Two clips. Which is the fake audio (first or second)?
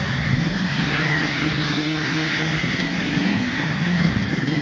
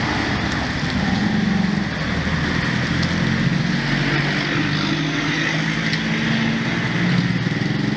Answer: first